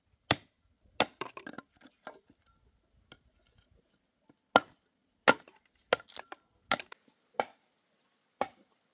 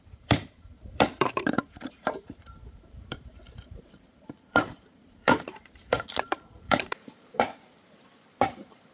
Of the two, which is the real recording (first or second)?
first